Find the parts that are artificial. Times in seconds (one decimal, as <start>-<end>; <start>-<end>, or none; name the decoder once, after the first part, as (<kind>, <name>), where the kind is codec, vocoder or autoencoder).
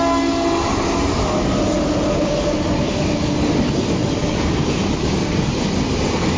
4.0-5.2 (vocoder, BigVGAN v2)